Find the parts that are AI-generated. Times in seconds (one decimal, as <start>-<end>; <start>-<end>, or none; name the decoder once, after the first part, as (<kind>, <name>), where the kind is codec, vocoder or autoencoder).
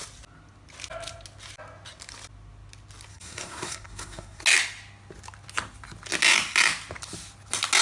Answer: 3.1-4.4 (codec, SNAC)